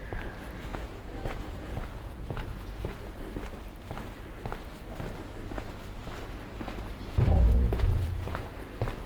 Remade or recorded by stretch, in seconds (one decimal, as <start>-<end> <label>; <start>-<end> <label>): 0.0-0.7 recorded; 0.7-3.2 remade; 3.2-7.0 recorded; 7.0-8.5 remade; 8.5-9.1 recorded